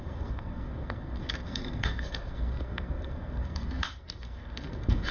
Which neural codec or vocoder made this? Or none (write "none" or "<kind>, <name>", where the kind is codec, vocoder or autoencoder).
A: codec, SNAC